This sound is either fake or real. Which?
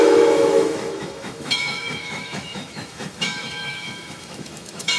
fake